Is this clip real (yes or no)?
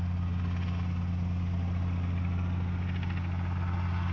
yes